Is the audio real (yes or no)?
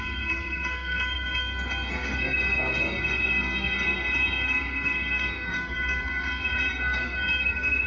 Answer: no